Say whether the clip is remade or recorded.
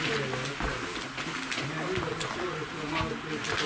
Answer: recorded